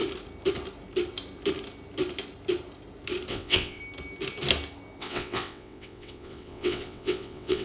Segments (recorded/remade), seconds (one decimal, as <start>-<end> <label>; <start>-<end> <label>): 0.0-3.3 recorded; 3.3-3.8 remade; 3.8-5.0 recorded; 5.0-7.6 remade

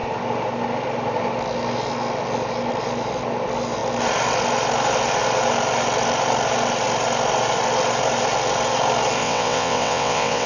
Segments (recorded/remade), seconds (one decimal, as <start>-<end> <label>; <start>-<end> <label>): 0.0-9.2 recorded; 9.2-10.5 remade

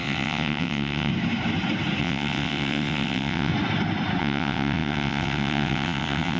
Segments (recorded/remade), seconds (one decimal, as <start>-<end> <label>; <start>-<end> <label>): 0.0-1.1 remade; 1.1-2.0 recorded; 2.0-3.5 remade; 3.5-4.2 recorded; 4.2-6.4 remade

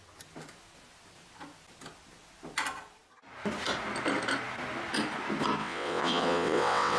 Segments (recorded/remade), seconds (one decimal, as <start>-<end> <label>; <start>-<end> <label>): 0.0-5.6 recorded; 5.6-7.0 remade

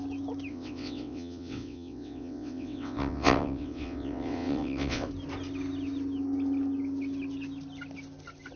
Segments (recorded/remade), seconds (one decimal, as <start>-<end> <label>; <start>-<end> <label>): 0.0-0.5 recorded; 0.5-5.1 remade; 5.1-8.6 recorded